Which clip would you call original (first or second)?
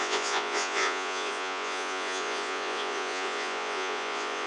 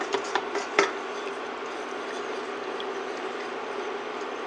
second